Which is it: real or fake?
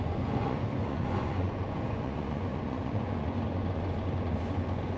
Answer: fake